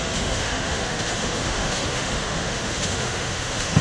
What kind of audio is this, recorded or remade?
remade